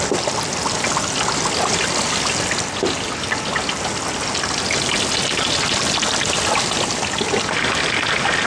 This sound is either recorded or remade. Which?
recorded